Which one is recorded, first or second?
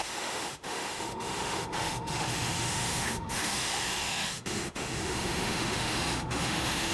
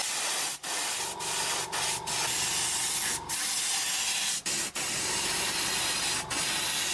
second